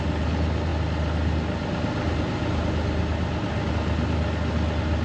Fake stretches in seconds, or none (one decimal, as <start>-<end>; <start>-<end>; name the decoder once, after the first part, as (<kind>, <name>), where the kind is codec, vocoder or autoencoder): none